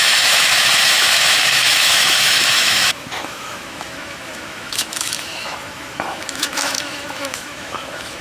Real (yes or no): no